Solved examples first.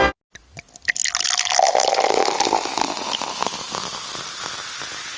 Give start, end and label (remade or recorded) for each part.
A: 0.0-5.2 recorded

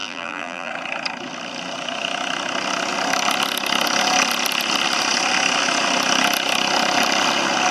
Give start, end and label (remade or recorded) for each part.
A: 0.0-0.7 remade; 0.7-7.7 recorded

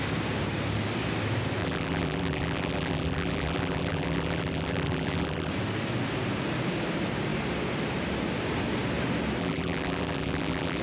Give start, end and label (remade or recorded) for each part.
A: 0.0-1.6 recorded; 1.6-5.5 remade; 5.5-9.4 recorded; 9.4-10.8 remade

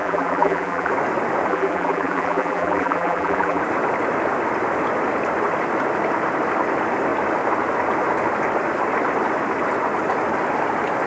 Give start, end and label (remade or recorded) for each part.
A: 0.0-0.9 remade; 0.9-1.5 recorded; 1.5-3.6 remade; 3.6-11.1 recorded

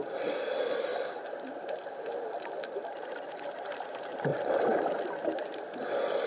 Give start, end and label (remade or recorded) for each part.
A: 0.0-4.3 recorded; 4.3-4.9 remade; 4.9-6.3 recorded

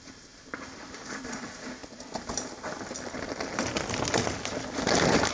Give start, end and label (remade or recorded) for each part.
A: 0.0-1.8 remade; 1.8-5.3 recorded